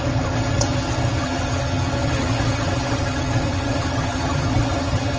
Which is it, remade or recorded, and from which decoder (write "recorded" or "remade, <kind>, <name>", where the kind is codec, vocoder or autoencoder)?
remade, vocoder, HiFi-GAN